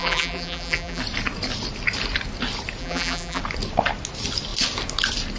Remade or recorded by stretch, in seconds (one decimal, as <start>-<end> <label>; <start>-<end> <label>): 0.0-1.0 remade; 1.0-2.8 recorded; 2.8-3.4 remade; 3.4-5.4 recorded